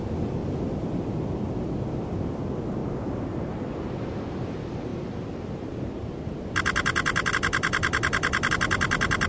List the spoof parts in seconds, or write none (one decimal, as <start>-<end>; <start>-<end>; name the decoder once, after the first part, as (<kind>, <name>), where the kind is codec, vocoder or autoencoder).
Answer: none